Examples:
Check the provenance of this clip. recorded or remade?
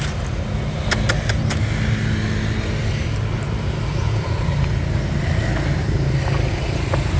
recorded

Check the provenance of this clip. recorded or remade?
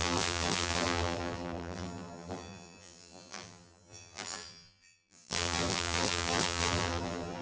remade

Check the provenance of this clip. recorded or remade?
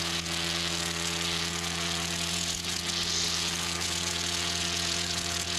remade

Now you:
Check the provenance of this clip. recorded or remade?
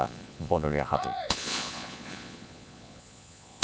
remade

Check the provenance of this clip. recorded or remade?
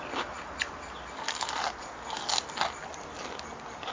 recorded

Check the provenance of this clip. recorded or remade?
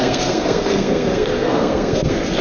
remade